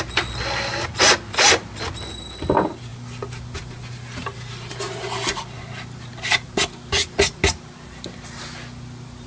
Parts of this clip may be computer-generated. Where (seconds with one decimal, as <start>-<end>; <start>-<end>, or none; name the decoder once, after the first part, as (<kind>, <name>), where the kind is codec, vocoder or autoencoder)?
none